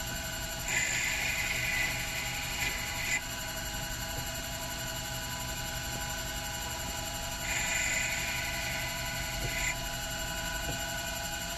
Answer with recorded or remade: recorded